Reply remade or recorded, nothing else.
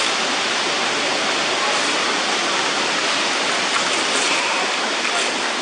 recorded